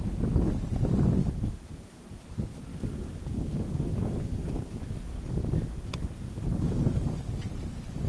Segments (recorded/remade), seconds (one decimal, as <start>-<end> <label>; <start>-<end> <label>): 0.0-1.2 recorded; 1.2-2.2 remade; 2.2-2.7 recorded; 2.7-7.3 remade; 7.3-8.1 recorded